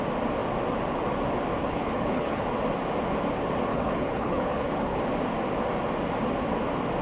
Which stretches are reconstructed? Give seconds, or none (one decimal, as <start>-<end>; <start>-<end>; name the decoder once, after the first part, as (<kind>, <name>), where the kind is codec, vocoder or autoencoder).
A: 1.6-2.4 (codec, HILCodec); 3.7-5.0